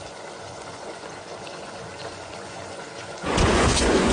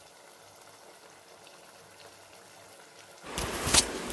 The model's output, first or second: first